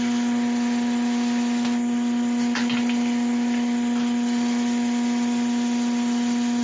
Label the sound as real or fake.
real